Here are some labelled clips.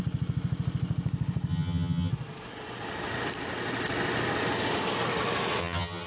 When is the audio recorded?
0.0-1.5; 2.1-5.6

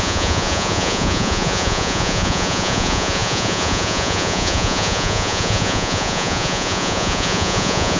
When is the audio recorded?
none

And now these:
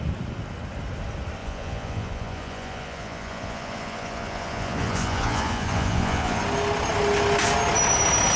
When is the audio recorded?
0.0-1.4; 6.4-8.4

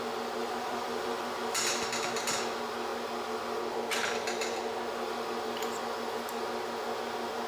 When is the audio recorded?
0.0-0.4; 1.7-7.5

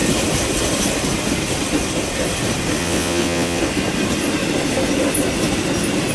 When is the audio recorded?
0.0-2.8; 3.6-6.1

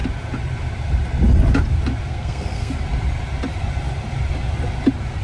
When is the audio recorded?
0.0-2.1; 2.7-5.2